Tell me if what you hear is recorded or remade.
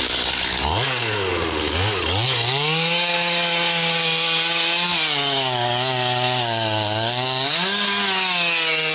remade